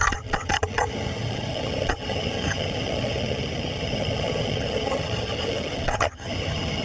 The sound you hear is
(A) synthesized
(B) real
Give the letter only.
A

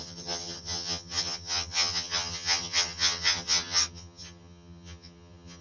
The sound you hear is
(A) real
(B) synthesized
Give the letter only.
B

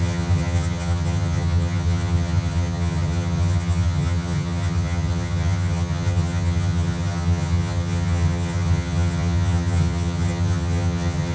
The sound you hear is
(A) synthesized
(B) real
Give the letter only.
A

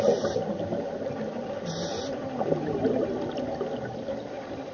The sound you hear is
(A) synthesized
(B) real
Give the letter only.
B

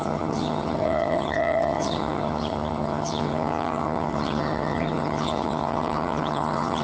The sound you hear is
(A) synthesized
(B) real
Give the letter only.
A